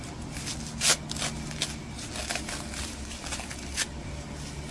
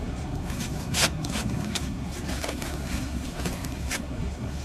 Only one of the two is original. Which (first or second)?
first